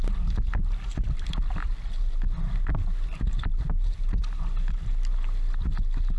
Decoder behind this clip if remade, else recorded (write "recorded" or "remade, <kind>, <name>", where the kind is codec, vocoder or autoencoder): recorded